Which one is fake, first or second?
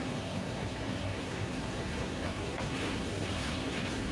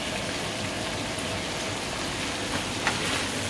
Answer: first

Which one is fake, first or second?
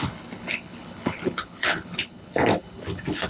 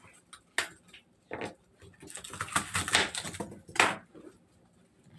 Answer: first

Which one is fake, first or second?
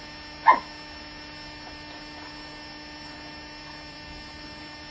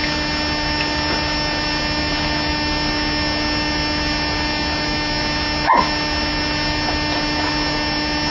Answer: first